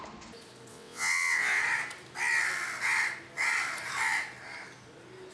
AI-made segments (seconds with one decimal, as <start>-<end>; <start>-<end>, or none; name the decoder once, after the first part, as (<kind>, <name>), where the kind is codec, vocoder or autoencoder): 0.7-1.6 (vocoder, WaveNeXt)